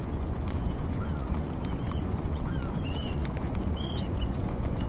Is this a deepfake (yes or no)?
yes